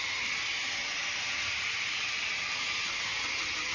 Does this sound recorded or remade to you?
recorded